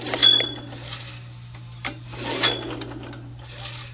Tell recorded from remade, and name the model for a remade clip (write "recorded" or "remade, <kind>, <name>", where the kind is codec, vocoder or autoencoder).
recorded